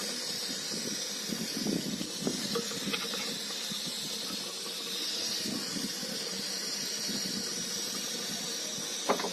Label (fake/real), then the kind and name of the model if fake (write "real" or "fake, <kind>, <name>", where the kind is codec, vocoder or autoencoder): real